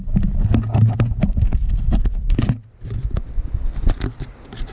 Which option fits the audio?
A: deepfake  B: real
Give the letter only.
B